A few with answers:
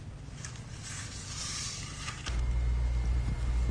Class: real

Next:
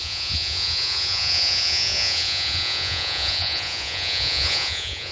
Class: fake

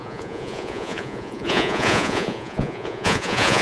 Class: fake